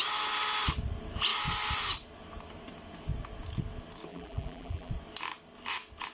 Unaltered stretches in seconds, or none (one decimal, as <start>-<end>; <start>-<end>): 0.0-4.1; 4.9-6.1